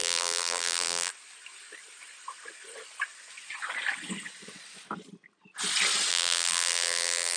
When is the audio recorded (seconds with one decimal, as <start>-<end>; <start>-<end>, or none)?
1.1-6.1